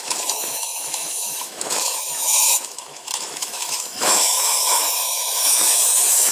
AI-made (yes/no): yes